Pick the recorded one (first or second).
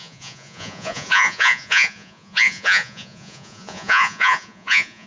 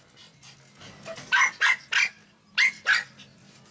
second